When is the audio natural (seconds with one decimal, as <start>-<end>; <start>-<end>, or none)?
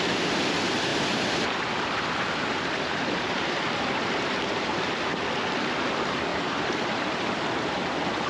0.0-0.9; 4.9-6.3; 7.4-8.3